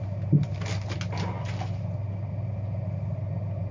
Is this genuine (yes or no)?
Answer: yes